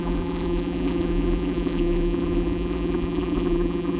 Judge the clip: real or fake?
fake